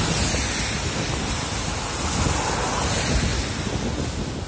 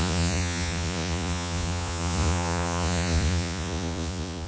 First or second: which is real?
first